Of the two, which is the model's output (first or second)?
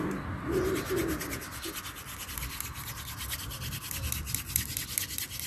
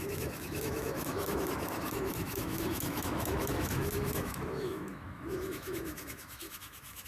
second